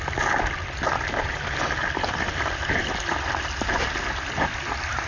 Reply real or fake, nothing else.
real